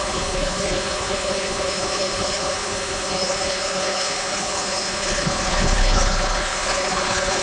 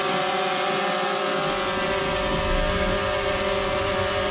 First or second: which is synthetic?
first